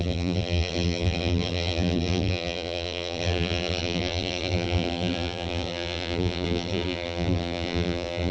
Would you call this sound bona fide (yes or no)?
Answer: no